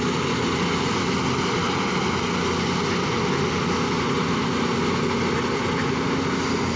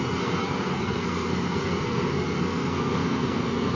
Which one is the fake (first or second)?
second